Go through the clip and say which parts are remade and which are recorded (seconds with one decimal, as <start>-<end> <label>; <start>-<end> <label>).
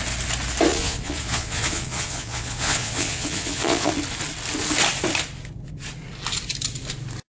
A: 0.0-0.7 recorded; 0.7-3.9 remade; 3.9-7.4 recorded